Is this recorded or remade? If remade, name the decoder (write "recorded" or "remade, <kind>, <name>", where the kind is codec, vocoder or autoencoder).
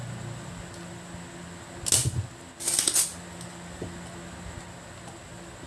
recorded